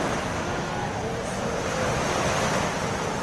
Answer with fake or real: real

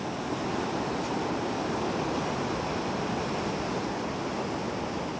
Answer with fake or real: real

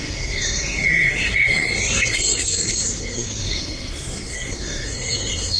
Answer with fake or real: fake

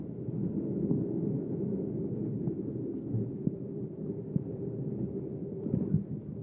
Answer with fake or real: real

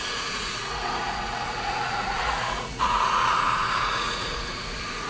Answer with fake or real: fake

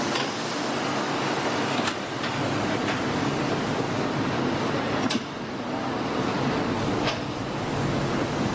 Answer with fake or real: real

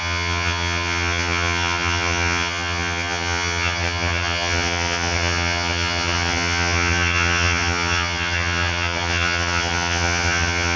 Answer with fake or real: fake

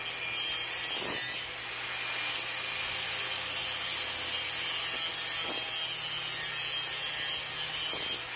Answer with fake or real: real